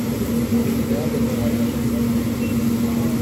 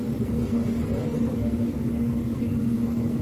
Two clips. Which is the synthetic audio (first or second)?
second